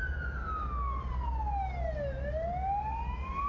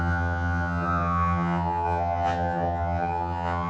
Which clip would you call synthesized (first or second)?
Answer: second